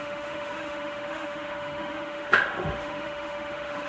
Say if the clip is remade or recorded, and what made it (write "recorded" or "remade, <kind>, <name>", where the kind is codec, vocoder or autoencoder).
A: remade, autoencoder, DAC-VAE